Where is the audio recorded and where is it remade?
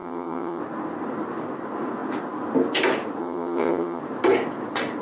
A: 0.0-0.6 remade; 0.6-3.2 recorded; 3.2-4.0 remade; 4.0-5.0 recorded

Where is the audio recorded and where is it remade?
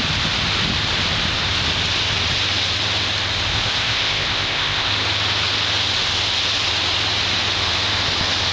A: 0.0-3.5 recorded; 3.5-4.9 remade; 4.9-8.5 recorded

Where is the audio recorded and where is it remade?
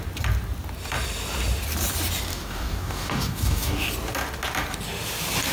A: 0.0-2.3 recorded; 2.3-3.9 remade; 3.9-5.5 recorded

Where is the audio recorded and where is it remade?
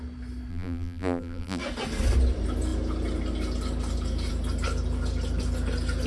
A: 0.0-0.5 recorded; 0.5-1.6 remade; 1.6-6.1 recorded